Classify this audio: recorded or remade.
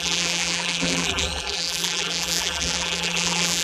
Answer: remade